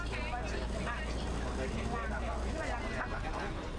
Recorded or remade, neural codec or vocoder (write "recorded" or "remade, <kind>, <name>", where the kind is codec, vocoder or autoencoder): recorded